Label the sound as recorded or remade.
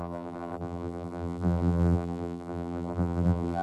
remade